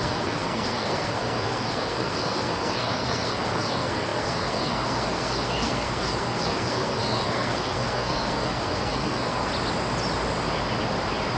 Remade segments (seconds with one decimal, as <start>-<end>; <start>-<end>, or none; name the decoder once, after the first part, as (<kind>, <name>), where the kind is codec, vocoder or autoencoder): 0.0-9.5 (codec, SNAC)